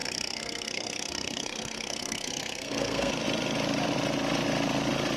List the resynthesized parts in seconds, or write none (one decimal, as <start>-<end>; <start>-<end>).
0.0-3.1